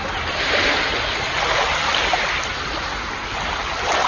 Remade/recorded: recorded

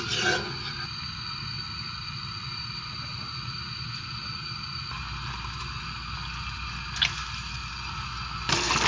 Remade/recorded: recorded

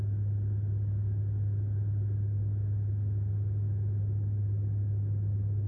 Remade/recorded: recorded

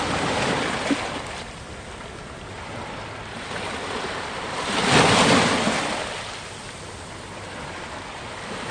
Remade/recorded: recorded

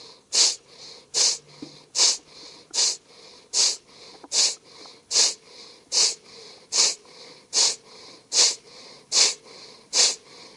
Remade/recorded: recorded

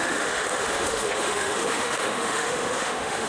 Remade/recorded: remade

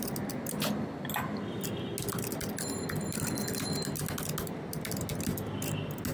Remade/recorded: recorded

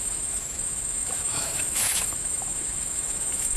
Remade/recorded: remade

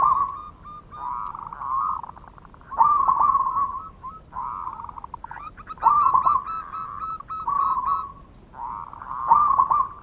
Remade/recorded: recorded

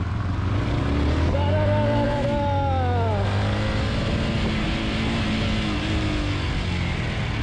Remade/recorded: recorded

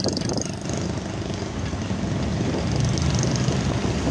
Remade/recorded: recorded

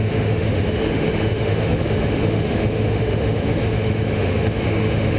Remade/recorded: remade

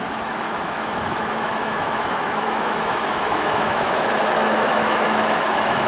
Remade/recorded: remade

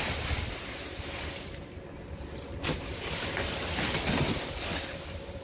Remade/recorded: recorded